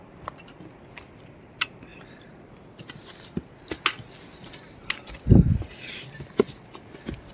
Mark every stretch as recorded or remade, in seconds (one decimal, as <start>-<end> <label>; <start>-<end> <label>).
0.0-1.9 recorded; 1.9-3.4 remade; 3.4-7.3 recorded